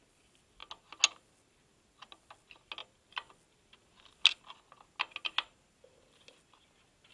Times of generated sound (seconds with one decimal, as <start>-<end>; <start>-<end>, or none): none